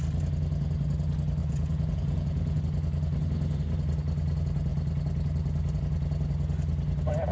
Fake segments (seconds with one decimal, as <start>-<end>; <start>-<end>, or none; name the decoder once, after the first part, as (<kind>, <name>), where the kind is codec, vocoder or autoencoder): 1.4-2.6 (vocoder, Vocos)